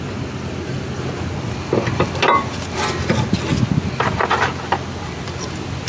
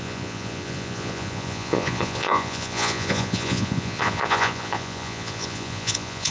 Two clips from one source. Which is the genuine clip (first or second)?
first